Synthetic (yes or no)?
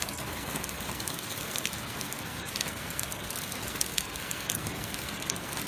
yes